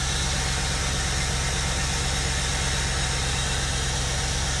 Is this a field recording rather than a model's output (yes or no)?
yes